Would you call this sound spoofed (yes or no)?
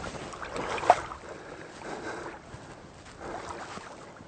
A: no